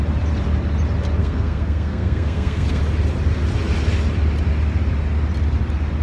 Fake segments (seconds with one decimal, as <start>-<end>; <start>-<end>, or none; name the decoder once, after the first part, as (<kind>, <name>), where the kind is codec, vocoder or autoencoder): 1.2-2.8 (codec, SNAC)